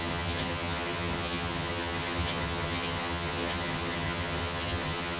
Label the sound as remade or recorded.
remade